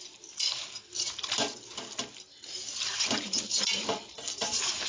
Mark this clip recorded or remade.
recorded